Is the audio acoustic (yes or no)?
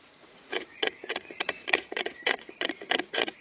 no